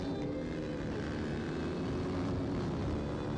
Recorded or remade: recorded